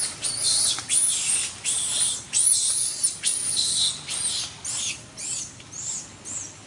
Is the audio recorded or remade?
recorded